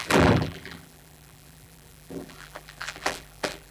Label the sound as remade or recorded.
remade